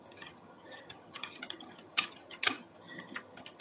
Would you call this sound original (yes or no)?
no